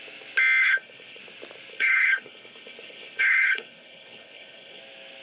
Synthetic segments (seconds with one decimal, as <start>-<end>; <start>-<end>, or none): 0.6-1.2; 1.7-4.8